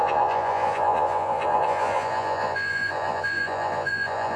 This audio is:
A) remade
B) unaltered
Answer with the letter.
A